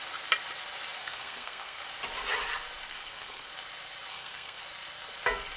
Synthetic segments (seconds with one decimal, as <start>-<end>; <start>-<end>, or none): 1.0-1.8; 2.9-3.5; 4.1-4.6